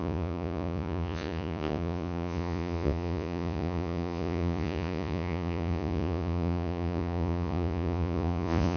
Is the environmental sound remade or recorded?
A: remade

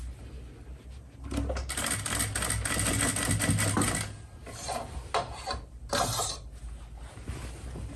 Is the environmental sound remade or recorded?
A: recorded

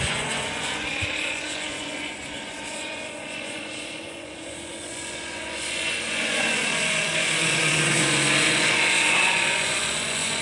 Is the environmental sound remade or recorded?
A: remade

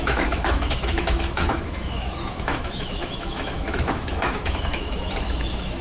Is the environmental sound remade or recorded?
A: remade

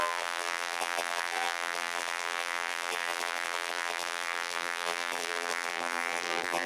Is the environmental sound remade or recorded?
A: remade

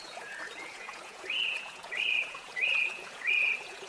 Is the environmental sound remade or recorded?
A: remade